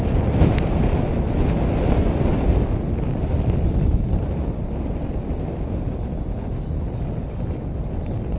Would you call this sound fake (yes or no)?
no